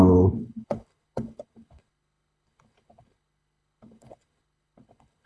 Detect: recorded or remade remade